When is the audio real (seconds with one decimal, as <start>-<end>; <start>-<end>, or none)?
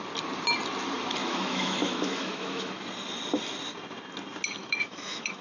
0.0-1.2; 2.7-4.6